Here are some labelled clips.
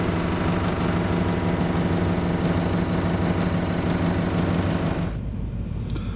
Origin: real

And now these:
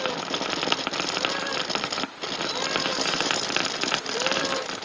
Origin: real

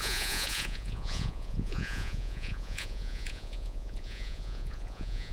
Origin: fake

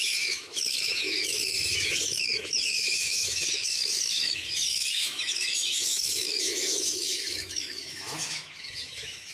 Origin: fake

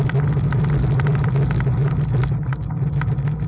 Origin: real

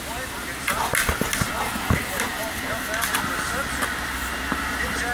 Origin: real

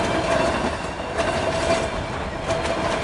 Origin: real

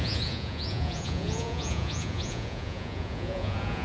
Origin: fake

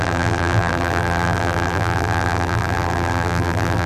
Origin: fake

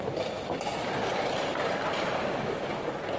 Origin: real